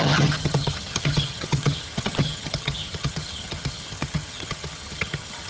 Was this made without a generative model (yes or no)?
no